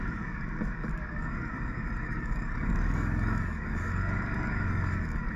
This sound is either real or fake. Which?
fake